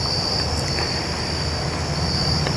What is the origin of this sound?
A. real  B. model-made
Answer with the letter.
A